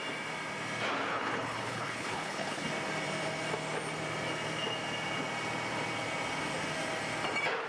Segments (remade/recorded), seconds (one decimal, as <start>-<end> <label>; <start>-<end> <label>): 0.0-1.1 recorded; 1.1-2.7 remade; 2.7-7.7 recorded